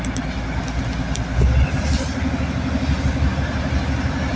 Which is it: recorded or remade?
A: recorded